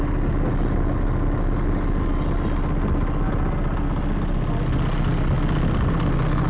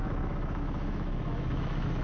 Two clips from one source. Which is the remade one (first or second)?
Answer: second